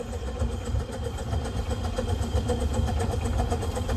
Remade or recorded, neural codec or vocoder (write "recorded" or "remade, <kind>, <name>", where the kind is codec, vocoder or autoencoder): recorded